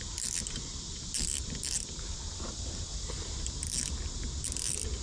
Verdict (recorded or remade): recorded